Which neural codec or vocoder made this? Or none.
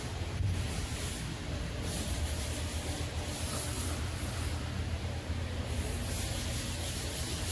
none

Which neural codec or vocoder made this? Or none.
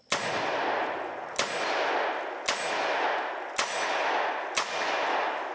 none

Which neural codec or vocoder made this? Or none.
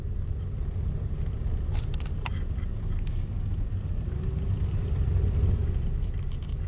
none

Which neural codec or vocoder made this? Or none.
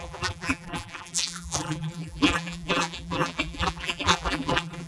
vocoder, BigVGAN v2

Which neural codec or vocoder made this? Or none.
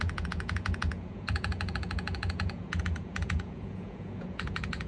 vocoder, Vocos